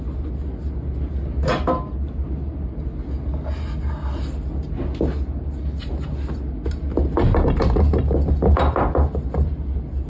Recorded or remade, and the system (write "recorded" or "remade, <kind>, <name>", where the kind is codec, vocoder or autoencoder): recorded